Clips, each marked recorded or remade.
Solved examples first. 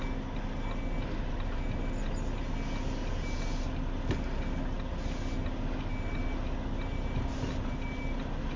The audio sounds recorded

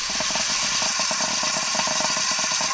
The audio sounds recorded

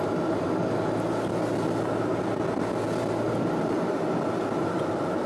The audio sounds recorded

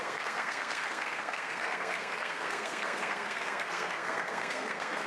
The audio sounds remade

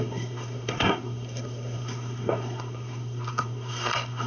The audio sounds remade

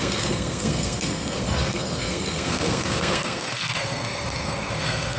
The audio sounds remade